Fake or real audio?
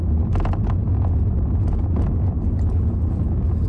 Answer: real